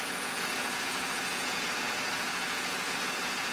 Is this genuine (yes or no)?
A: no